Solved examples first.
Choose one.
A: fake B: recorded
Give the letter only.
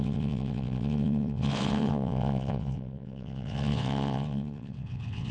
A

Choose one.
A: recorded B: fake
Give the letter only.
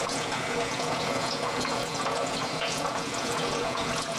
B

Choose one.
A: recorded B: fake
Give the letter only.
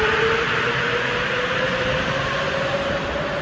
A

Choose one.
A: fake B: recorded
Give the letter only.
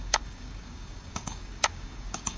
A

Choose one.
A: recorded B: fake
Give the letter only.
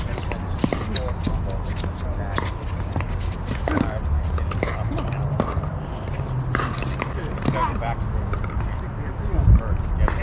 A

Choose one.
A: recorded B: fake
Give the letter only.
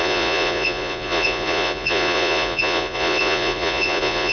B